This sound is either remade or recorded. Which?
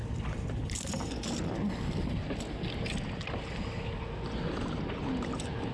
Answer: recorded